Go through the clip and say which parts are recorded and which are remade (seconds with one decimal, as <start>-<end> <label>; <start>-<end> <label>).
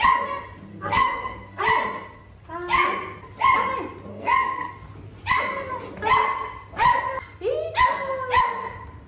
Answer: 0.0-0.7 recorded; 0.7-1.6 remade; 1.6-4.1 recorded; 4.1-4.7 remade; 4.7-9.1 recorded